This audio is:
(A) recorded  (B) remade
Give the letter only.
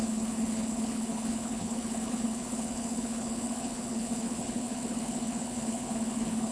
B